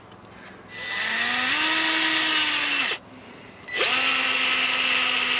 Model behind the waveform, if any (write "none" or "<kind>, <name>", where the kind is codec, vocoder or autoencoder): none